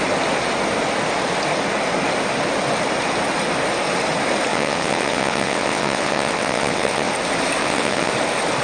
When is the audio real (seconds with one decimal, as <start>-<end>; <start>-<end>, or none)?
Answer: 0.0-4.5; 7.1-7.6; 8.1-8.6